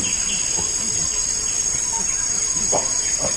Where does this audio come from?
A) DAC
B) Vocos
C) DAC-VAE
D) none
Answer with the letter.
D